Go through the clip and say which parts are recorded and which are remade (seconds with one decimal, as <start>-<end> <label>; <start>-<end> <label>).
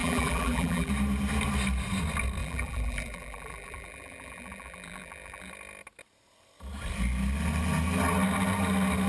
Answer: 0.0-0.9 remade; 0.9-2.4 recorded; 2.4-5.5 remade; 5.5-9.1 recorded